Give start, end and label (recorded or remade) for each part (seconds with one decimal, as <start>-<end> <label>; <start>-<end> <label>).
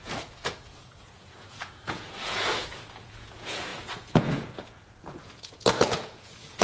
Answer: 0.0-6.6 remade